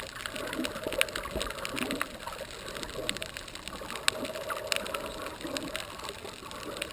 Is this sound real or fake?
real